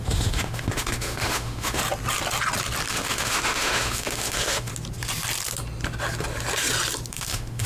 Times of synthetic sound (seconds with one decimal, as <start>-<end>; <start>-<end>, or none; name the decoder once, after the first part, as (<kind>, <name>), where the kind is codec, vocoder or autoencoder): 0.0-1.8 (autoencoder, DAC-VAE); 2.9-4.7; 7.1-7.7